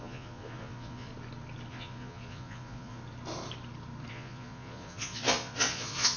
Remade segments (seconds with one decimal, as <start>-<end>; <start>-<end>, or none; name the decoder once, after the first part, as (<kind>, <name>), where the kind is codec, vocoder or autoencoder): 0.0-1.1 (vocoder, Vocos); 1.7-3.0; 4.1-6.2